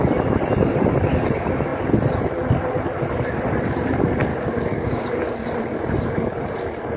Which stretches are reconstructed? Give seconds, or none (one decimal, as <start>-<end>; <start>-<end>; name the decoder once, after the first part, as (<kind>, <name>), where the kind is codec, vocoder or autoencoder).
4.3-5.1 (codec, DAC)